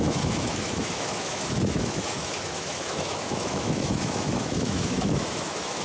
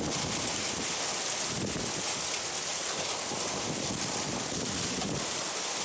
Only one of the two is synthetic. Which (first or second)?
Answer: first